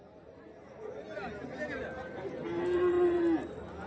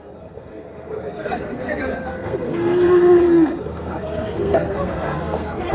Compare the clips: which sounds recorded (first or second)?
first